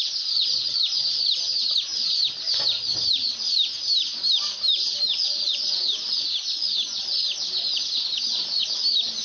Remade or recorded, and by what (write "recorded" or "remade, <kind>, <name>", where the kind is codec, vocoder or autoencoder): recorded